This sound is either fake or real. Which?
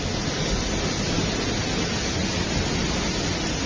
real